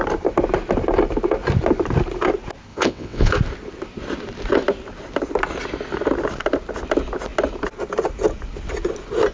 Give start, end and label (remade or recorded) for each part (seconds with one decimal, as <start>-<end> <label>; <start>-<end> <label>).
0.0-2.7 recorded; 2.7-3.3 remade; 3.3-9.3 recorded